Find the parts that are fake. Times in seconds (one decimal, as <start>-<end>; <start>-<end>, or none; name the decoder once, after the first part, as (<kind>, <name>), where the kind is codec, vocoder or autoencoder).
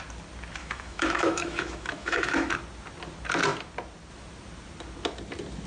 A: 0.6-2.5 (autoencoder, DAC-VAE)